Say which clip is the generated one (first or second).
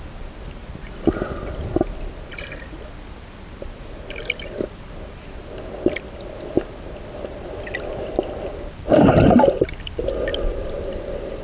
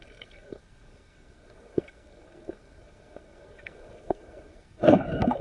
second